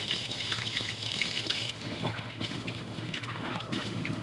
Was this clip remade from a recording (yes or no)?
yes